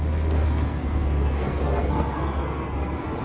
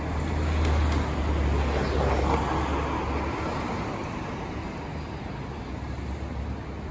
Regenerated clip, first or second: first